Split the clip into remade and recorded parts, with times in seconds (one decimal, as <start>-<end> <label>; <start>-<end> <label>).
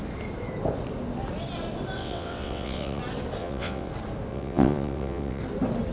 0.0-2.0 recorded; 2.0-3.0 remade; 3.0-3.4 recorded; 3.4-3.9 remade; 3.9-4.3 recorded; 4.3-5.4 remade; 5.4-5.9 recorded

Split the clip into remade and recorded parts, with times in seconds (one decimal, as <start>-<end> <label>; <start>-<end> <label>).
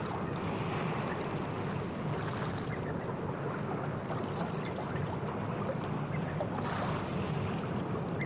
0.0-8.3 recorded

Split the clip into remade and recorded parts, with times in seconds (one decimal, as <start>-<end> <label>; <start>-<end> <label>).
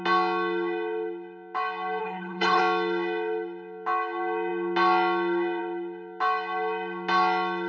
0.0-2.0 recorded; 2.0-2.6 remade; 2.6-7.7 recorded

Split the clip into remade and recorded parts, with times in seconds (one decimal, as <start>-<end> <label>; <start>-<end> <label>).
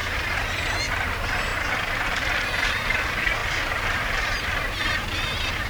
0.0-1.5 remade; 1.5-2.1 recorded; 2.1-5.7 remade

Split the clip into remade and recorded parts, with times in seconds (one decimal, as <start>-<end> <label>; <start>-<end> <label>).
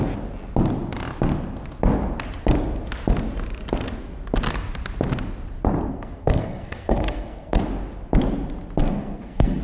0.0-5.9 recorded; 5.9-7.6 remade; 7.6-8.8 recorded; 8.8-9.6 remade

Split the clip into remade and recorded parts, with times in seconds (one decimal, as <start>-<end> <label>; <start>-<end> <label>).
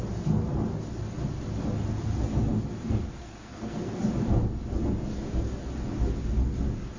0.0-3.1 recorded; 3.1-4.0 remade; 4.0-7.0 recorded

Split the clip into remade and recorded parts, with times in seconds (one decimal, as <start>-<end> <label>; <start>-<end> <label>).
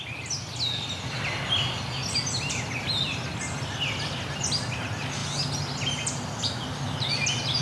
0.0-7.6 recorded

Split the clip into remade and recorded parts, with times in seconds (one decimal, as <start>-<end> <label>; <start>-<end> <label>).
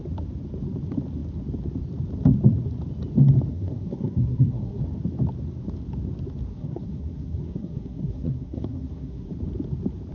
0.0-3.5 recorded; 3.5-4.8 remade; 4.8-6.5 recorded; 6.5-9.3 remade; 9.3-10.1 recorded